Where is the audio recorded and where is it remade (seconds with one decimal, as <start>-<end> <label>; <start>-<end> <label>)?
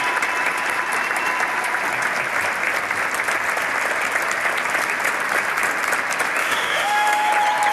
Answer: 0.0-6.4 recorded; 6.4-7.3 remade; 7.3-7.7 recorded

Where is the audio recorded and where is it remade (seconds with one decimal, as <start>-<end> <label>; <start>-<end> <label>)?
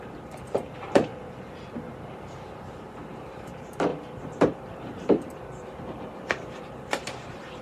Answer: 0.0-1.1 remade; 1.1-2.7 recorded; 2.7-7.6 remade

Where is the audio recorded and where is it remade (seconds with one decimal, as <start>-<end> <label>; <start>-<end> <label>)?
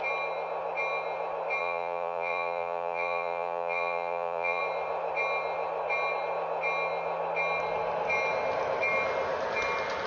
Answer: 0.0-1.6 recorded; 1.6-4.6 remade; 4.6-10.1 recorded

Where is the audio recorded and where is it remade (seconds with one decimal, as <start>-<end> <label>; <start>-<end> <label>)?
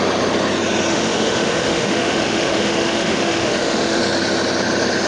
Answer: 0.0-0.9 recorded; 0.9-4.0 remade; 4.0-5.1 recorded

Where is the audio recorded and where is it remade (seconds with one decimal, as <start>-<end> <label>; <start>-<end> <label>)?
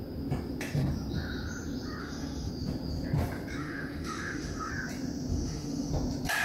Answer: 0.0-2.0 recorded; 2.0-2.5 remade; 2.5-3.6 recorded; 3.6-4.7 remade; 4.7-5.3 recorded; 5.3-5.9 remade; 5.9-6.4 recorded